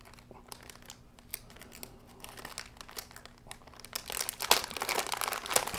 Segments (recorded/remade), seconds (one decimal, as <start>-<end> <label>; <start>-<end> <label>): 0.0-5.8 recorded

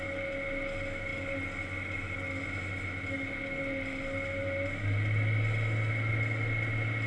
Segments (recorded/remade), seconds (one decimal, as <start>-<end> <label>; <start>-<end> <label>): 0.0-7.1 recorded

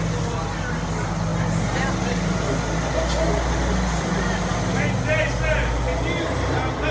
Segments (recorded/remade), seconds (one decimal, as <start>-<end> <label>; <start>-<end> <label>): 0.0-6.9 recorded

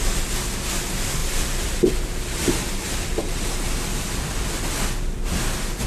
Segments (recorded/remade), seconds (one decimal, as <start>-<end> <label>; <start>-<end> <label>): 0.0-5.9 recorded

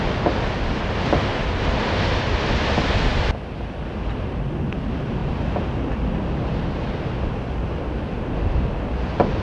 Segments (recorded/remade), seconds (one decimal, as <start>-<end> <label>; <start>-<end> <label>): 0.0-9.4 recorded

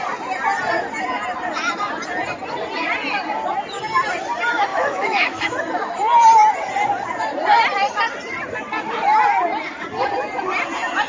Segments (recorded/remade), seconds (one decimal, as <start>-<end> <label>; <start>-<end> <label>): 0.0-4.7 recorded; 4.7-5.5 remade; 5.5-11.1 recorded

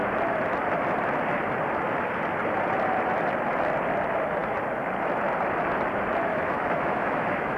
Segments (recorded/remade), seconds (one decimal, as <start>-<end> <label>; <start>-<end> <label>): 0.0-6.3 recorded; 6.3-7.6 remade

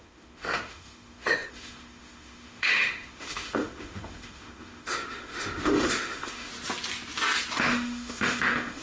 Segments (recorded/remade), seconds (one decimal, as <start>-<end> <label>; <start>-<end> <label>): 0.0-6.5 remade; 6.5-7.6 recorded; 7.6-8.8 remade